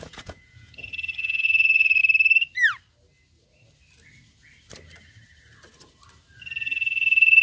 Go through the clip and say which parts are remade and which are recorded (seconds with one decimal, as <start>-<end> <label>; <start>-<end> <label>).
0.0-2.0 remade; 2.0-6.4 recorded; 6.4-7.4 remade